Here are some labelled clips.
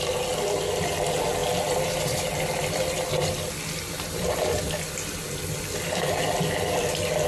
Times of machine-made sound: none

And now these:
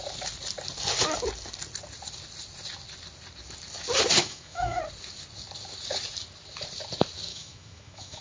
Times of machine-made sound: 4.2-4.8 (autoencoder, DAC-VAE); 7.3-8.2

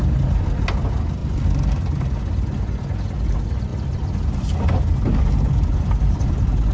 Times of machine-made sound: none

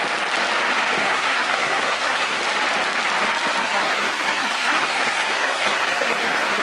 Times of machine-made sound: 1.0-2.4 (codec, SNAC); 3.6-6.6